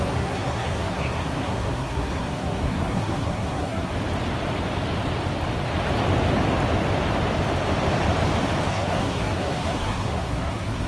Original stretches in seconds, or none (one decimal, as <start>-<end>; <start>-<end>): 3.9-8.7